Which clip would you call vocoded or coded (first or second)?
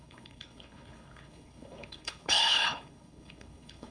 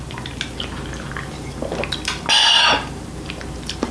first